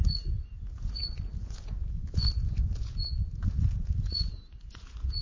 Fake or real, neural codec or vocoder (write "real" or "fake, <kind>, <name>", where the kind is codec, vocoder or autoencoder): fake, vocoder, Vocos